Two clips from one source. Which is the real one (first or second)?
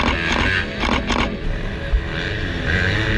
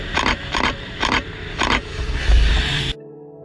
first